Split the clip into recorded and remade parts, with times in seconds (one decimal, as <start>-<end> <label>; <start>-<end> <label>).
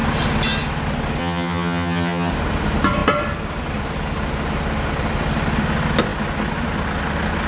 0.0-1.2 recorded; 1.2-2.3 remade; 2.3-7.5 recorded